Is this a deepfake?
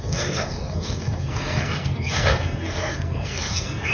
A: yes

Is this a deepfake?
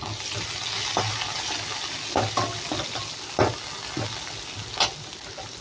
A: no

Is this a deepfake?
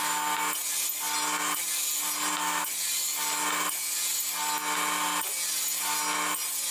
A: no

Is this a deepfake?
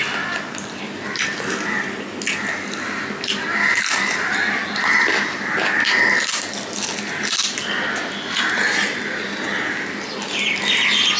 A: no